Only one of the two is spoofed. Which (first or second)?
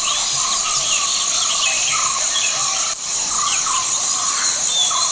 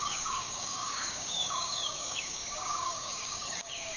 second